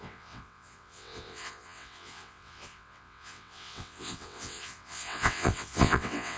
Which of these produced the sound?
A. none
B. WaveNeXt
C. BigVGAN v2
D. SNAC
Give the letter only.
B